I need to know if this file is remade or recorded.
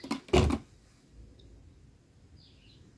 recorded